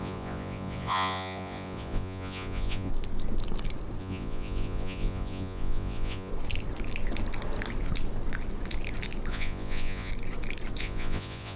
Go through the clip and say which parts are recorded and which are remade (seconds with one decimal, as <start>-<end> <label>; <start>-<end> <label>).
0.0-2.9 remade; 2.9-4.0 recorded; 4.0-6.3 remade; 6.3-9.3 recorded; 9.3-10.1 remade; 10.1-10.8 recorded; 10.8-11.6 remade